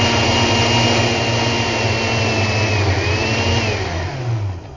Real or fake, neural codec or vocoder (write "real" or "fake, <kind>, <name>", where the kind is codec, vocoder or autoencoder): real